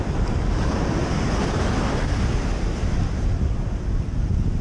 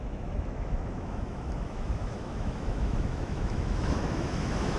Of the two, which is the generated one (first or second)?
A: second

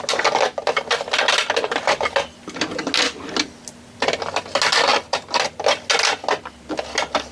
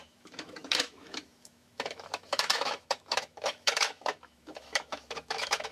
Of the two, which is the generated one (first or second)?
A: second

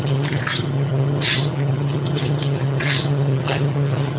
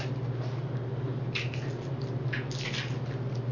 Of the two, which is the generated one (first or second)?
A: first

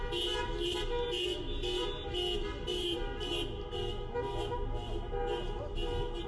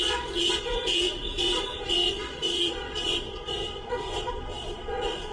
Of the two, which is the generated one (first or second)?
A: second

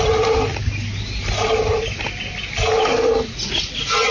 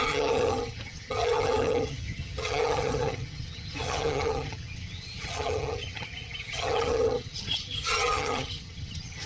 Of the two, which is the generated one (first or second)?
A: second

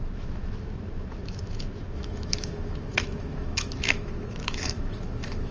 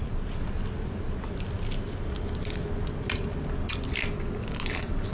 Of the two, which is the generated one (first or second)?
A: first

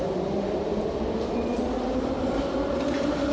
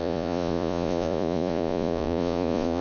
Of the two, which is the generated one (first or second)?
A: second